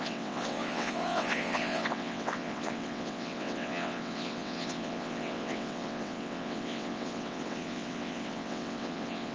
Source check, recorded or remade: remade